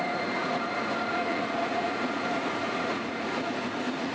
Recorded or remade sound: remade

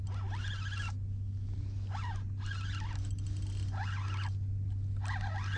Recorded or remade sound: recorded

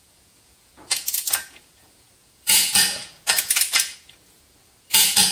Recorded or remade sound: remade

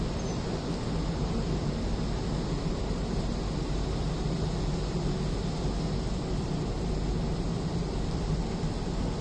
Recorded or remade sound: recorded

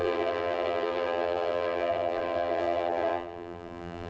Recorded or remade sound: remade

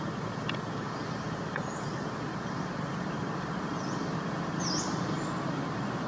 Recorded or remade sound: recorded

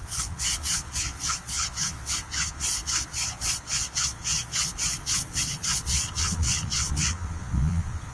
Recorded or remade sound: remade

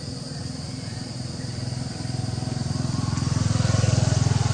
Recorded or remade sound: recorded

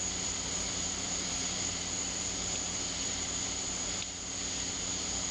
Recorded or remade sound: remade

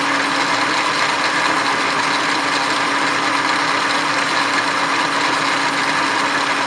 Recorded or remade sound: recorded